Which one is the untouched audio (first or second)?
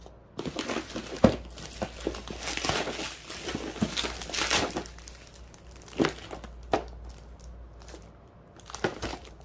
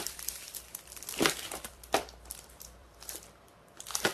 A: first